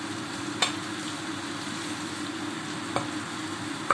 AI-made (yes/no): no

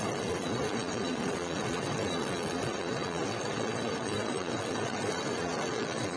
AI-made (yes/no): yes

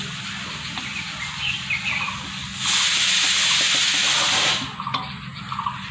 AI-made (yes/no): no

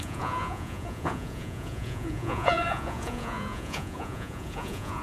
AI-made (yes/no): yes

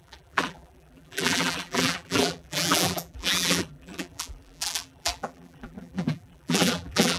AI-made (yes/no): yes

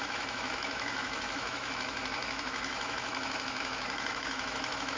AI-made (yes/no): yes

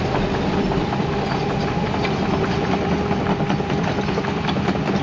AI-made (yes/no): no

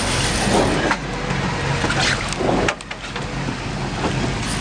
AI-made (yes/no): no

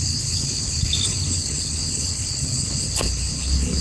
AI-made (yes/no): yes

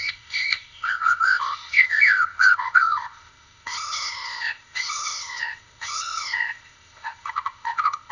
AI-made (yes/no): yes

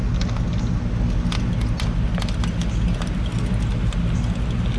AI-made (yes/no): no